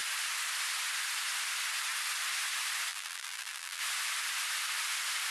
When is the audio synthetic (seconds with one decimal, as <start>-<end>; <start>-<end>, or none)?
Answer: 2.9-3.8